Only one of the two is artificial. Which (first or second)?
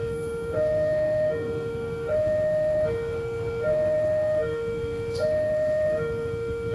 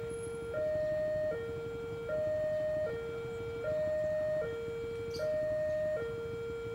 first